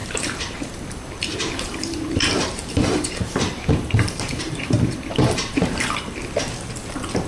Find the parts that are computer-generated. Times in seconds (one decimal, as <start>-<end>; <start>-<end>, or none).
0.0-6.2